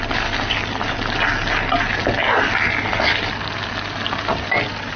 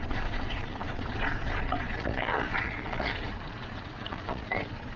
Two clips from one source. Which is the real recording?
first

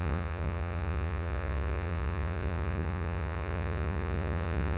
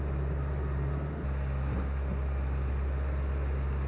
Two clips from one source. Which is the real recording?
second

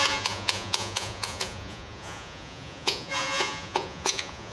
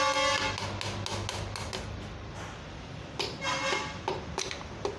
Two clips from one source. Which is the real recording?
second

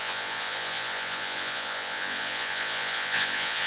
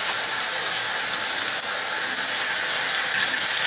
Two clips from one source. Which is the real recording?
second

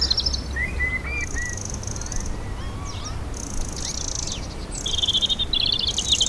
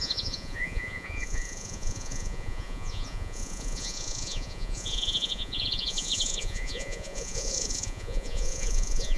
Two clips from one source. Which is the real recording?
first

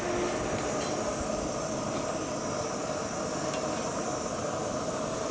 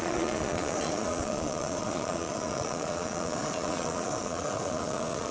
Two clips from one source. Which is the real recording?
first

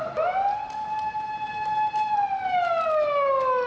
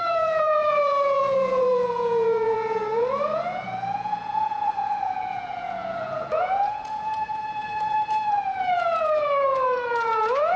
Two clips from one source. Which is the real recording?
first